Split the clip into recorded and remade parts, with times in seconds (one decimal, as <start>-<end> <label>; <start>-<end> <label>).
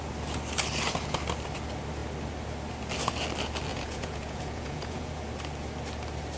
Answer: 0.0-3.7 recorded; 3.7-5.2 remade; 5.2-6.4 recorded